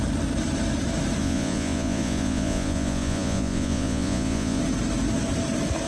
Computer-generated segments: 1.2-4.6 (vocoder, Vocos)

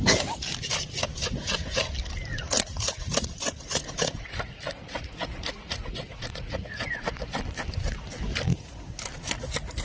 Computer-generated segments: 2.3-7.4 (vocoder, Vocos); 8.5-9.0

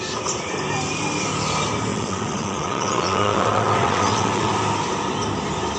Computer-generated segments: 1.9-4.5 (vocoder, WaveNeXt)

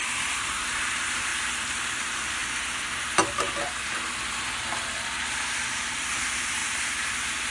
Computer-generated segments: 0.0-1.3 (vocoder, BigVGAN v2); 2.0-2.4; 5.7-7.5